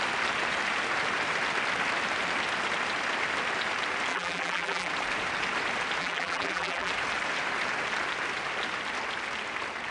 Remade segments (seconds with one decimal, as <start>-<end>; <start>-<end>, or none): 4.1-4.9; 6.0-6.9